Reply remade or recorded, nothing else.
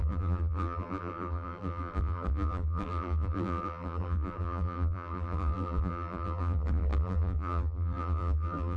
remade